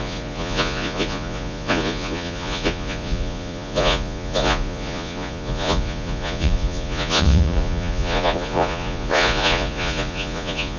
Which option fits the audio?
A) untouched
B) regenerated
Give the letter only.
B